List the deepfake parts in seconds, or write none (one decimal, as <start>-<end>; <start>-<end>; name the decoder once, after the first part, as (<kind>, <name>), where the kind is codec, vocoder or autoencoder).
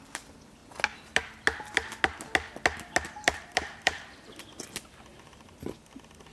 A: 3.2-4.3 (vocoder, BigVGAN v2); 5.1-5.7